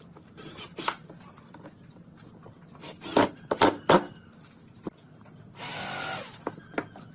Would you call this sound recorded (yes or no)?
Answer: yes